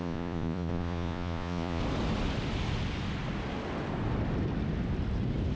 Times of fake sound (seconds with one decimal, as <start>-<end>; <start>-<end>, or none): 0.0-1.8